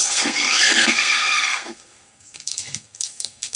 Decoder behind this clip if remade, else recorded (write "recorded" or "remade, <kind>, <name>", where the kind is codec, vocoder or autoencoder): remade, codec, SNAC